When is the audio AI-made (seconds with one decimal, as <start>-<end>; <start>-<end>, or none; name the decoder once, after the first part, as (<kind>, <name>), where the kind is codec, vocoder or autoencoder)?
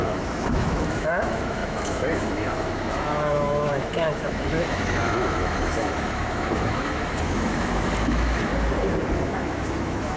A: 0.0-8.5 (autoencoder, DAC-VAE); 9.2-10.2